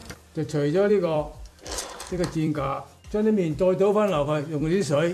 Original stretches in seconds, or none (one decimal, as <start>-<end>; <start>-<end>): 0.0-0.9; 2.9-4.4